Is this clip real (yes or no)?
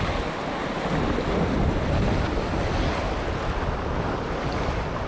yes